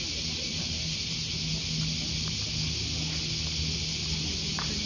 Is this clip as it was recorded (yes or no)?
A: yes